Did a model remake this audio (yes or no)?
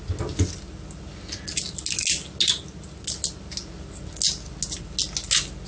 no